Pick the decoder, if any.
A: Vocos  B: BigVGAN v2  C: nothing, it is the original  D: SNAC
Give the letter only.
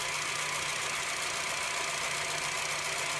C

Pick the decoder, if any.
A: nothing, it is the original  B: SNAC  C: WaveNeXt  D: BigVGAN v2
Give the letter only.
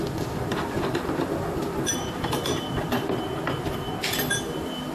D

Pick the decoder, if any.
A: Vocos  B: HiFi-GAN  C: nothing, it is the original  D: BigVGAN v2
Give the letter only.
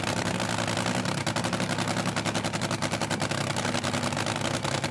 C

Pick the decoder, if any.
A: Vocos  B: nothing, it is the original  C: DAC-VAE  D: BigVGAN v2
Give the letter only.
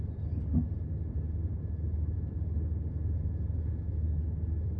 B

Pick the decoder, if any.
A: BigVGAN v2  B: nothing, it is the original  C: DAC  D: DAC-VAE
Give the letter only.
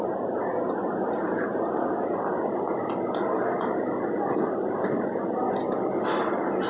B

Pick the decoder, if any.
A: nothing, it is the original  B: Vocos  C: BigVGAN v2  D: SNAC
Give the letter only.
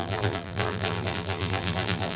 C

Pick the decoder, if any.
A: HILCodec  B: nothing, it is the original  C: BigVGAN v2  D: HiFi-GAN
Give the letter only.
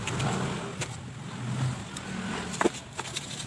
B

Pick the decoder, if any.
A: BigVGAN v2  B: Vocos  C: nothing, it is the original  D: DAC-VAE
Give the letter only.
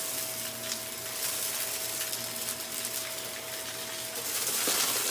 C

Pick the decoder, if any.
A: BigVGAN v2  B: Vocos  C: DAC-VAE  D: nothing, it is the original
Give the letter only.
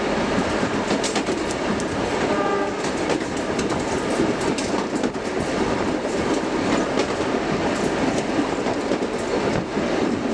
D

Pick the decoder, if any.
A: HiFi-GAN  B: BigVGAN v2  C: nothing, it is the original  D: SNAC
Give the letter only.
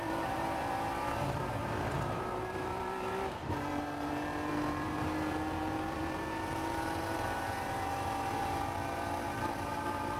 B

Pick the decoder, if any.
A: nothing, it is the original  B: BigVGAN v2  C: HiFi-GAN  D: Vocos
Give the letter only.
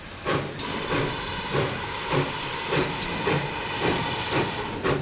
A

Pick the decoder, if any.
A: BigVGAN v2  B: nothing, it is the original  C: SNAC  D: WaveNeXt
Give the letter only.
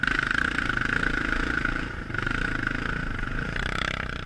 A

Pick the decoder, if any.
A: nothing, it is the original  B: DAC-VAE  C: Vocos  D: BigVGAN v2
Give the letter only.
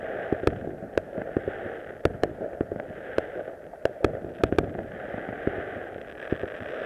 A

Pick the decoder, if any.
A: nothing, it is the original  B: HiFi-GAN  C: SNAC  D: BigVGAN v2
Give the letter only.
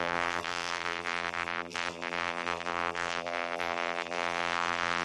D